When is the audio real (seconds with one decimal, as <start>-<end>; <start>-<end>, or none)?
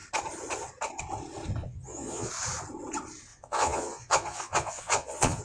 0.0-1.6; 2.3-3.3